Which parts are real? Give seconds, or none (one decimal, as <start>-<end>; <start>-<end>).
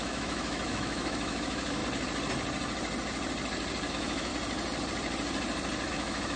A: 1.8-3.9; 4.3-5.9